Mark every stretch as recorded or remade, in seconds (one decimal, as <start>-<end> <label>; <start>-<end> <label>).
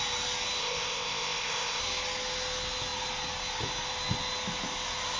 0.0-0.6 recorded; 0.6-1.8 remade; 1.8-5.2 recorded